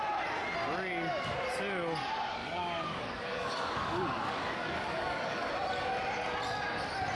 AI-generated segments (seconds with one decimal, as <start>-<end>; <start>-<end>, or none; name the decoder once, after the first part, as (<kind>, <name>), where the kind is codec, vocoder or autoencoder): 2.4-5.5 (codec, DAC)